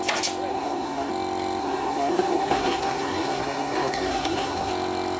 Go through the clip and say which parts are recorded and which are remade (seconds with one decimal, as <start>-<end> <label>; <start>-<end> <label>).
0.0-0.5 recorded; 0.5-1.1 remade; 1.1-1.6 recorded; 1.6-4.7 remade; 4.7-5.2 recorded